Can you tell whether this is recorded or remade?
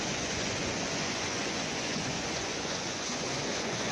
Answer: remade